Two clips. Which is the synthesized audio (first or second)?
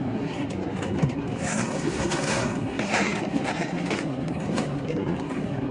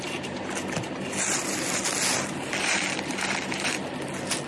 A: first